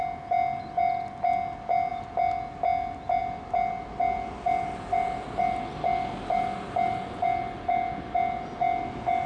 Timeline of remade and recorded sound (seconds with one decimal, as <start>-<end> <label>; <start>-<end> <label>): 0.0-9.3 recorded